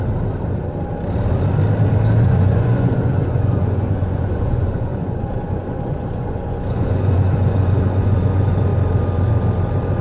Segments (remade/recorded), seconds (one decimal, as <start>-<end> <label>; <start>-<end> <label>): 0.0-2.2 recorded; 2.2-8.7 remade; 8.7-10.0 recorded